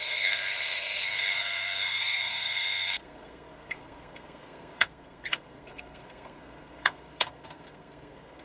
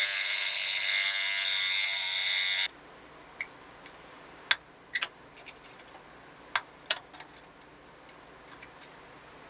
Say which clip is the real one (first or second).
second